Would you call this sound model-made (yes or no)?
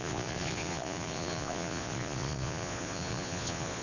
yes